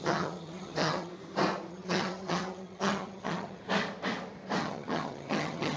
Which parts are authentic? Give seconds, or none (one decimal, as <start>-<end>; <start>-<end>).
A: 1.1-1.7; 3.6-4.6